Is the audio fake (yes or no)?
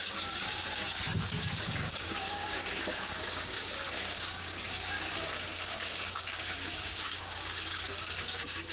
yes